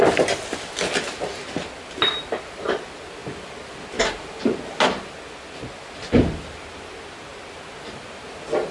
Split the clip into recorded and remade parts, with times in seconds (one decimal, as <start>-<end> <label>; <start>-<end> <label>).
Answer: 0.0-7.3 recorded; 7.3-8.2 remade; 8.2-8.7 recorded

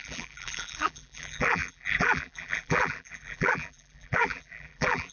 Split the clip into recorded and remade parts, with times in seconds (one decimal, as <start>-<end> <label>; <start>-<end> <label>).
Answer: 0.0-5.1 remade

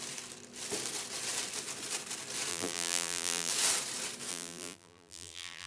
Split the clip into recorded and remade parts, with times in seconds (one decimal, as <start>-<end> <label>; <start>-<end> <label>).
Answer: 0.0-2.5 recorded; 2.5-3.5 remade; 3.5-4.3 recorded; 4.3-5.7 remade

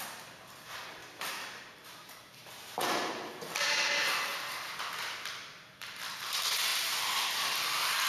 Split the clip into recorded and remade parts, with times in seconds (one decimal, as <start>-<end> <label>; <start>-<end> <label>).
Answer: 0.0-1.0 recorded; 1.0-3.3 remade; 3.3-4.3 recorded; 4.3-6.0 remade; 6.0-8.1 recorded

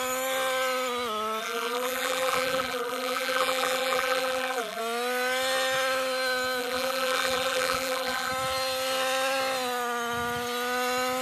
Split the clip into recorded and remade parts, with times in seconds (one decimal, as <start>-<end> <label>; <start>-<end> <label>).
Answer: 0.0-1.4 recorded; 1.4-4.8 remade; 4.8-6.6 recorded; 6.6-8.3 remade; 8.3-11.2 recorded